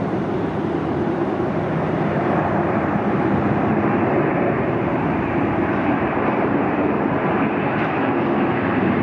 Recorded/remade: remade